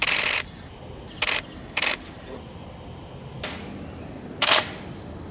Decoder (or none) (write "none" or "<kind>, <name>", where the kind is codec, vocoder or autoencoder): none